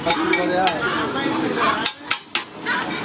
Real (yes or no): yes